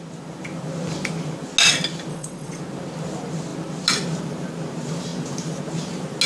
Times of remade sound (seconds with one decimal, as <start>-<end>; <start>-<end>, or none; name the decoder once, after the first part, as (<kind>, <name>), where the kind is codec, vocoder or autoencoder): 2.1-2.6 (vocoder, WaveNeXt)